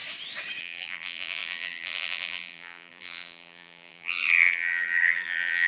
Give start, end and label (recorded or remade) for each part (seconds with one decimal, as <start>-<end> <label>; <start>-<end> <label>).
0.0-0.6 recorded; 0.6-5.7 remade